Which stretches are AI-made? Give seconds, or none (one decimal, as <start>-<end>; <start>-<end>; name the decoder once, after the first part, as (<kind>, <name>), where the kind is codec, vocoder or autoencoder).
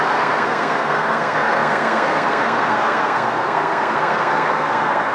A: 0.0-5.1 (codec, SNAC)